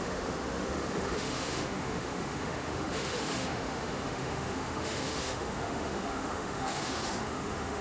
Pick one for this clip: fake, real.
fake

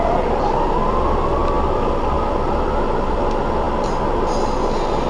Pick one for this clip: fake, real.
real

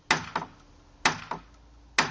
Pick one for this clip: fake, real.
real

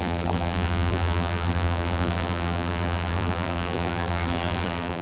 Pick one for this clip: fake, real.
fake